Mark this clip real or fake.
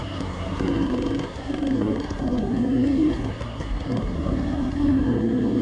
fake